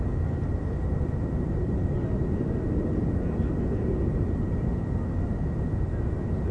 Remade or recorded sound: recorded